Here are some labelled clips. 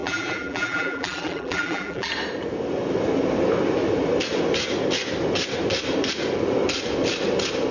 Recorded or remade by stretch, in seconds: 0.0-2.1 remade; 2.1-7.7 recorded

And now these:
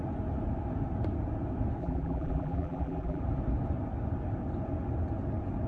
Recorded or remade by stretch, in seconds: 0.0-1.8 recorded; 1.8-3.2 remade; 3.2-5.7 recorded

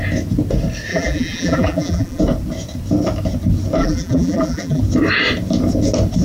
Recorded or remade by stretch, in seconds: 0.0-0.9 recorded; 0.9-2.2 remade; 2.2-3.8 recorded; 3.8-4.8 remade; 4.8-6.2 recorded

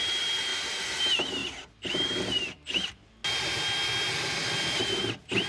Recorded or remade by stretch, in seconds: 0.0-0.5 remade; 0.5-1.0 recorded; 1.0-1.4 remade; 1.4-1.9 recorded; 1.9-3.2 remade; 3.2-4.1 recorded; 4.1-5.5 remade

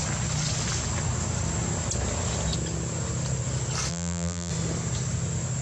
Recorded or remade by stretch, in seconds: 0.0-3.9 recorded; 3.9-4.5 remade; 4.5-5.6 recorded

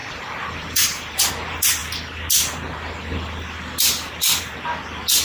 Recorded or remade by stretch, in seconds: 0.0-1.3 remade; 1.3-5.2 recorded

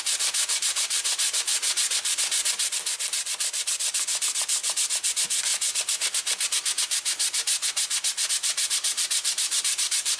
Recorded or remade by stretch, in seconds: 0.0-1.5 remade; 1.5-3.1 recorded; 3.1-5.5 remade; 5.5-8.3 recorded; 8.3-10.2 remade